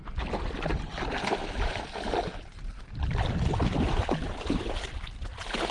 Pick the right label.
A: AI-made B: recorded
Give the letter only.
B